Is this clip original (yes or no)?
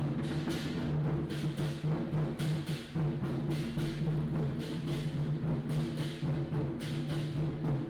yes